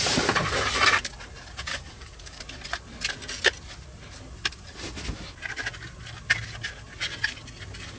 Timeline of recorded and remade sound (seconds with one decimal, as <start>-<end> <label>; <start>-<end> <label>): 0.0-1.7 recorded; 1.7-2.4 remade; 2.4-8.0 recorded